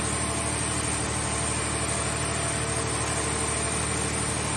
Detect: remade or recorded recorded